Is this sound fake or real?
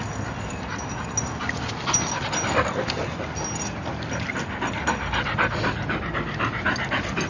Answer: real